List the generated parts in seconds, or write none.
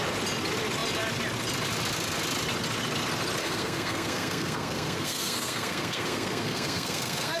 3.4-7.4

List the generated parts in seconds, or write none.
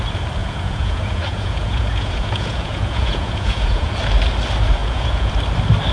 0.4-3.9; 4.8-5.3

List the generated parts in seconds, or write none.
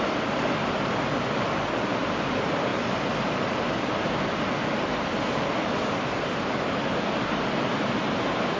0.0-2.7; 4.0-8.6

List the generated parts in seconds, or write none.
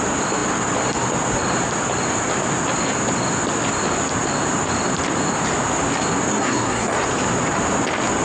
6.3-6.9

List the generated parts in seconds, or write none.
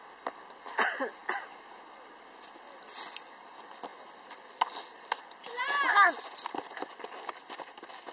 none